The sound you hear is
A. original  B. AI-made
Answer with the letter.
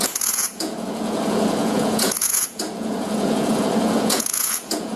B